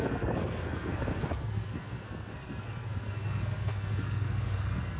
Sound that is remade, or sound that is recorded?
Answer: remade